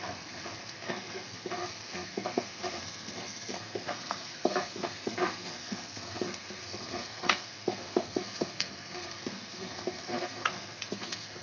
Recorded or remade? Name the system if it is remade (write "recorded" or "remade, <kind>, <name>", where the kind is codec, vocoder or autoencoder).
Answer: remade, codec, SNAC